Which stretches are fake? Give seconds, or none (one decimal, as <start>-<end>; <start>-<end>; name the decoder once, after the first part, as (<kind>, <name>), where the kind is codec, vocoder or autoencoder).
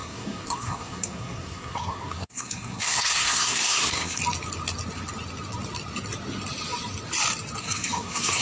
0.0-4.2 (codec, SNAC); 7.6-8.4